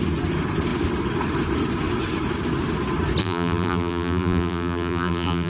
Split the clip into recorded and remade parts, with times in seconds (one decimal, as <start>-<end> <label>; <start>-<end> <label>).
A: 0.0-3.2 recorded; 3.2-5.5 remade